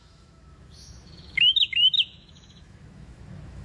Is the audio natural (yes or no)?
no